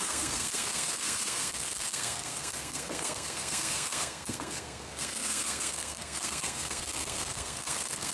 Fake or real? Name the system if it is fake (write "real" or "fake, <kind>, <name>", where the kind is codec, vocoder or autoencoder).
fake, codec, SNAC